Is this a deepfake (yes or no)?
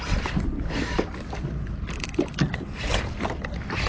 no